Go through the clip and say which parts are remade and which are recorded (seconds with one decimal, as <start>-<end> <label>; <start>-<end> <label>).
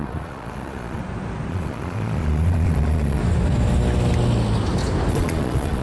0.0-1.0 remade; 1.0-1.5 recorded; 1.5-3.2 remade; 3.2-5.1 recorded; 5.1-5.8 remade